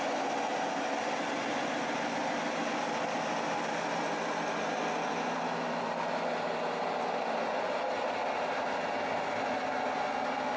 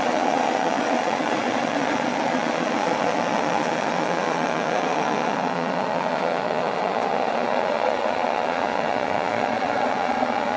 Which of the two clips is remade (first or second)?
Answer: second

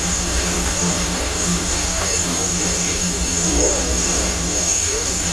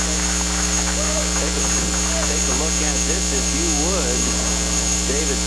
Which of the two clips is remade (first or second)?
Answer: first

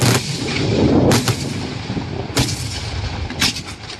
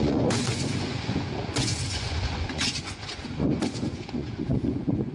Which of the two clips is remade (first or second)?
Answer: second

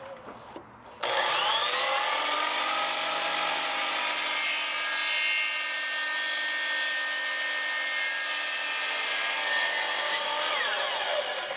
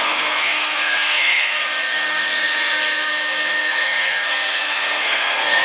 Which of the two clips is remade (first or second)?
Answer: second